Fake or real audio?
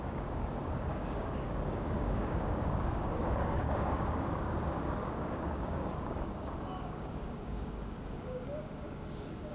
fake